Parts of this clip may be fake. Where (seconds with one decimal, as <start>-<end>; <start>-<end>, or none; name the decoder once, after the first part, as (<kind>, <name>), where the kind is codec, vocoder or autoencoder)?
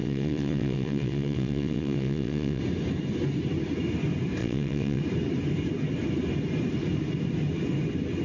0.0-2.6 (vocoder, WaveNeXt); 4.4-5.0